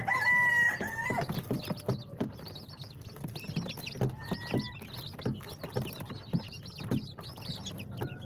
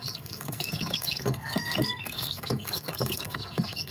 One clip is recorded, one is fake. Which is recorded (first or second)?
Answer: first